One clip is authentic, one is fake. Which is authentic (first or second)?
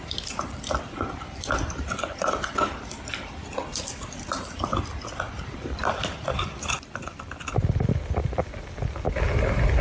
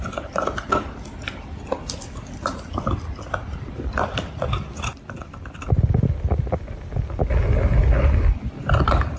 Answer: second